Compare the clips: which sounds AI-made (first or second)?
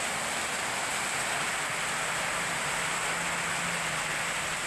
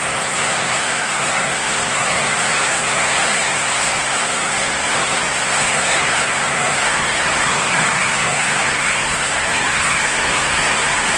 second